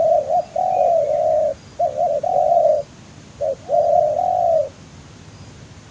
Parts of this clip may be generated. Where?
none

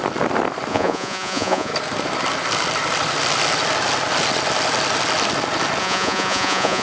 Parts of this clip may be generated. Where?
0.7-1.7 (vocoder, Vocos); 5.8-6.8